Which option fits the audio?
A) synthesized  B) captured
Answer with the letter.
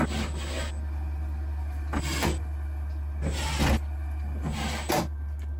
B